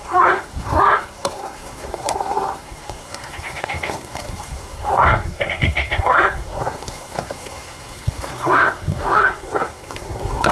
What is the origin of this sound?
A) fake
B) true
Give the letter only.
A